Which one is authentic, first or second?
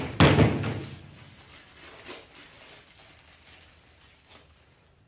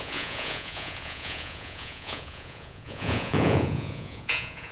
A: first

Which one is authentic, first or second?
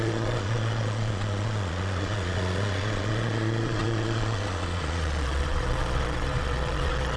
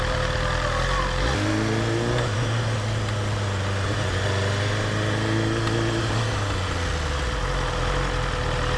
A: second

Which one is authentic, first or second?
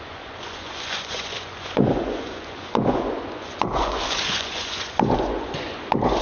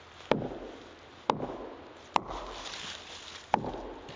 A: second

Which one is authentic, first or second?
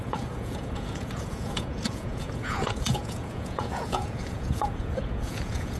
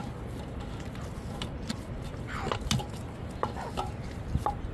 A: second